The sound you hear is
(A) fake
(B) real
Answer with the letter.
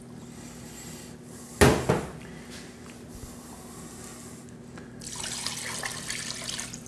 B